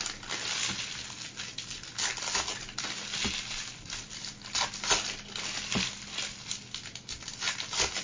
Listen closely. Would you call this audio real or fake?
real